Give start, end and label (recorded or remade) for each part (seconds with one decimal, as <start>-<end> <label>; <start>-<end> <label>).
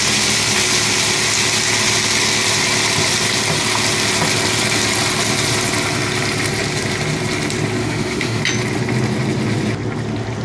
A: 0.0-7.8 recorded; 7.8-8.4 remade; 8.4-10.4 recorded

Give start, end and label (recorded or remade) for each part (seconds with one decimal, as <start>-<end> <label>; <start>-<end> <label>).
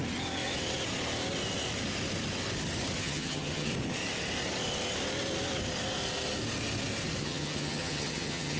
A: 0.0-3.0 recorded; 3.0-3.7 remade; 3.7-7.2 recorded; 7.2-8.6 remade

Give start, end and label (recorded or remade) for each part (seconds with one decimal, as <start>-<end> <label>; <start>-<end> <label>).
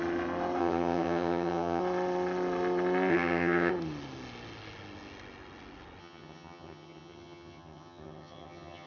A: 0.0-0.6 recorded; 0.6-1.8 remade; 1.8-3.1 recorded; 3.1-3.7 remade; 3.7-6.0 recorded; 6.0-8.9 remade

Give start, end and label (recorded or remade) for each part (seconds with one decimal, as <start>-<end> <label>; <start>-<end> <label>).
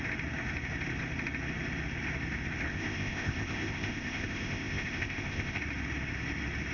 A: 0.0-2.7 recorded; 2.7-5.6 remade; 5.6-6.7 recorded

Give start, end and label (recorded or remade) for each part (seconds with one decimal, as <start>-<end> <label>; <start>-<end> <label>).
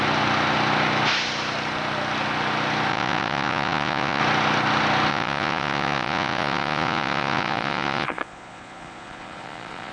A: 0.0-2.9 recorded; 2.9-4.2 remade; 4.2-5.1 recorded; 5.1-9.9 remade